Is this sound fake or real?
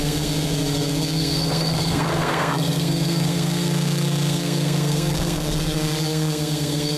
fake